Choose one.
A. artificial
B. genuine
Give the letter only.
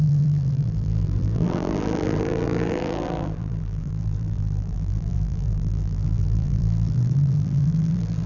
A